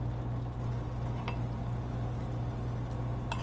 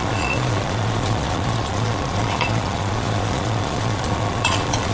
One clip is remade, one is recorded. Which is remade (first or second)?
second